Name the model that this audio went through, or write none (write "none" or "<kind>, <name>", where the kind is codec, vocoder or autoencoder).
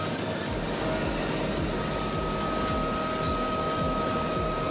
none